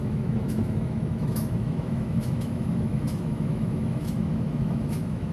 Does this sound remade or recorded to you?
remade